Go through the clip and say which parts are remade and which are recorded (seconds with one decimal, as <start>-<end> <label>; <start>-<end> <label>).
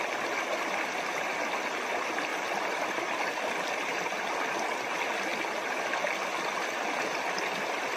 0.0-2.3 recorded; 2.3-3.7 remade; 3.7-8.0 recorded